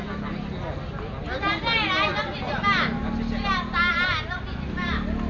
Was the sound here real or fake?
real